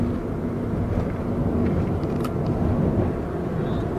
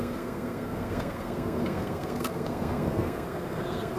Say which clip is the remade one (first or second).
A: second